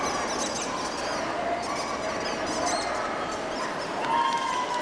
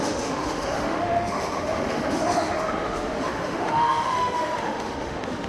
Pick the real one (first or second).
first